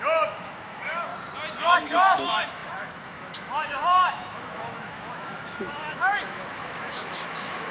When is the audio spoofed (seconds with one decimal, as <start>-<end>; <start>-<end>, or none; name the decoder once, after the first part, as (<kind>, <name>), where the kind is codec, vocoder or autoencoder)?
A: 0.0-1.1 (autoencoder, DAC-VAE); 1.6-7.7